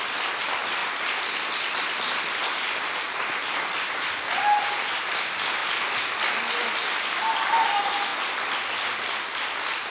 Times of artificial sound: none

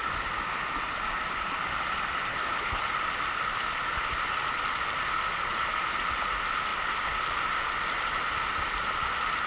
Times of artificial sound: 2.3-2.8 (codec, HILCodec)

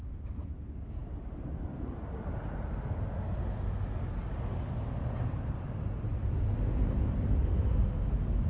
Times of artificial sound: none

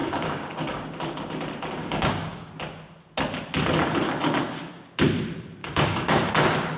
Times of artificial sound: 0.0-0.8 (codec, DAC); 1.8-2.6; 5.6-6.3

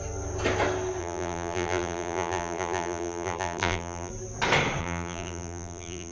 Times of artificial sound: 1.0-4.1 (vocoder, BigVGAN v2); 4.8-6.1

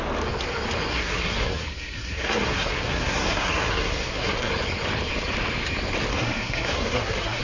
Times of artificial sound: 0.9-4.5 (codec, SNAC); 6.1-7.4

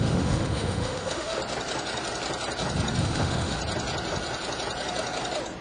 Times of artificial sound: 0.0-1.4 (autoencoder, DAC-VAE); 3.0-3.6

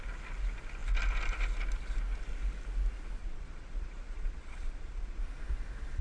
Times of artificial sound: 3.2-5.2 (vocoder, Vocos)